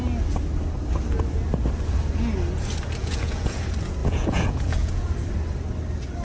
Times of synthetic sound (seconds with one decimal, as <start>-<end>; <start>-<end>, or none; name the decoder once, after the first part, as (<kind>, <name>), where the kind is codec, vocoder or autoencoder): 3.0-3.6 (vocoder, Vocos); 4.0-5.1